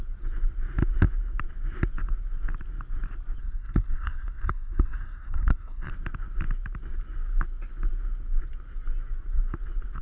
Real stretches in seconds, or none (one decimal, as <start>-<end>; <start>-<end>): 0.0-3.4; 5.9-10.0